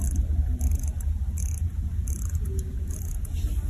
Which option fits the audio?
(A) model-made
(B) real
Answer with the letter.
B